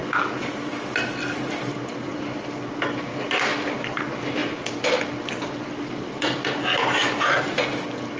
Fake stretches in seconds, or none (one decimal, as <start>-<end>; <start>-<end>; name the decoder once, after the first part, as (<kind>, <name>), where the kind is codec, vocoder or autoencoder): 7.0-7.6 (vocoder, BigVGAN v2)